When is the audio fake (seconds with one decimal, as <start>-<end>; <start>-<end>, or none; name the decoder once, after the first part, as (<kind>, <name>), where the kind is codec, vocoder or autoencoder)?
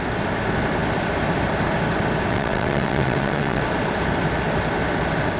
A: 2.3-3.6 (vocoder, WaveNeXt)